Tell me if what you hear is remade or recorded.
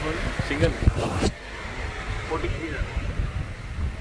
recorded